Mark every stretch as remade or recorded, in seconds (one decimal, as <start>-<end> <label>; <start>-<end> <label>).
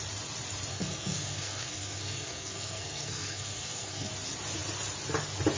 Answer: 0.0-0.7 recorded; 0.7-4.1 remade; 4.1-5.6 recorded